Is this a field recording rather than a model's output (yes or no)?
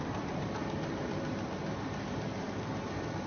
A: no